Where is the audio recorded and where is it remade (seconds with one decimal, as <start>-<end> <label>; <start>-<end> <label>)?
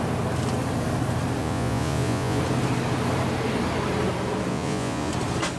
0.0-1.4 recorded; 1.4-2.4 remade; 2.4-4.5 recorded; 4.5-5.1 remade; 5.1-5.6 recorded